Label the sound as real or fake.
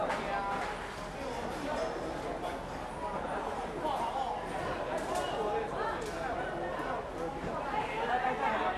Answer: real